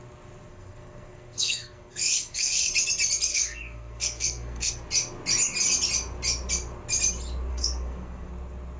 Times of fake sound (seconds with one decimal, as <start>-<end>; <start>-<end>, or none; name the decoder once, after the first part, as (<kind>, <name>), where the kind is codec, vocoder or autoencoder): 0.5-2.7 (codec, SNAC); 3.3-4.7; 7.5-8.3